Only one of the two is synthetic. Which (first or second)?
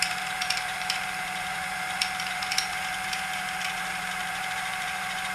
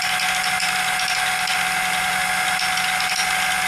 first